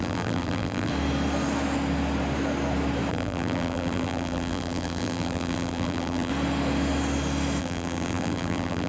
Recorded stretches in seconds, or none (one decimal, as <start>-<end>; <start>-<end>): 0.9-3.1; 6.3-7.6